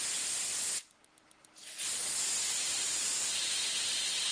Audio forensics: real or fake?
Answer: real